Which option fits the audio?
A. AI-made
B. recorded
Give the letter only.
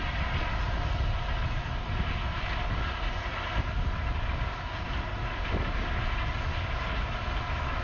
B